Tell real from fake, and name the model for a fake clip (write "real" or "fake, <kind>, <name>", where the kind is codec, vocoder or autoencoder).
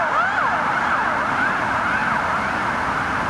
real